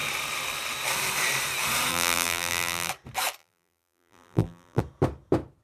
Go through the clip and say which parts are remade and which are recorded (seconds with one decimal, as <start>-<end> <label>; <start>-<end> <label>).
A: 0.0-1.9 recorded; 1.9-2.9 remade; 2.9-3.4 recorded; 3.4-4.8 remade; 4.8-5.6 recorded